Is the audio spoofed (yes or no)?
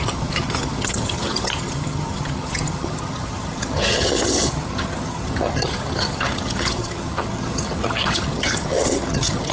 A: yes